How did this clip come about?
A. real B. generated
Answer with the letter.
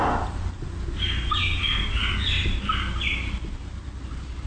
A